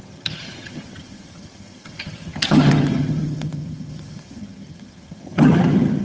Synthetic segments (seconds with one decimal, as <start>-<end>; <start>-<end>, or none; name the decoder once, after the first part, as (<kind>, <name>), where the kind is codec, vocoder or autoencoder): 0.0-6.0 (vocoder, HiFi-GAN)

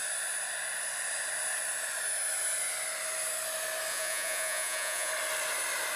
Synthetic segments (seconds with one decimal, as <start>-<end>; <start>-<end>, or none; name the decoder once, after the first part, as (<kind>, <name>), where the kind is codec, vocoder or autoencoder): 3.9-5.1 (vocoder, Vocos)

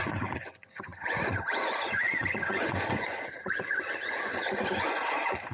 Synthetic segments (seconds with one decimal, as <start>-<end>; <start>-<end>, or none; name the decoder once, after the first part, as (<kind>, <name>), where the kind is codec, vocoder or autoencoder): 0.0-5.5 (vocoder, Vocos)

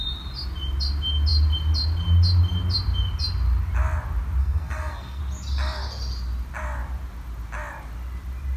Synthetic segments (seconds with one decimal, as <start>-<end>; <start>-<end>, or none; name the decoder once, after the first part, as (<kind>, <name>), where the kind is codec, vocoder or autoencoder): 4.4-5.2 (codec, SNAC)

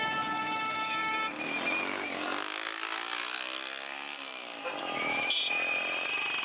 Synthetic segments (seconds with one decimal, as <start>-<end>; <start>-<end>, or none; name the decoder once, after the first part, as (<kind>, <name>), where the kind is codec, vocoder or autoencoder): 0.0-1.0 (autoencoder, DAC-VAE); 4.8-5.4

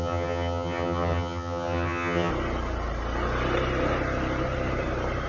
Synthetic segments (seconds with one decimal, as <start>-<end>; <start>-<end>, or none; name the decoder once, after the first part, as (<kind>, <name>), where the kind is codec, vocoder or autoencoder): 0.0-2.3 (vocoder, HiFi-GAN)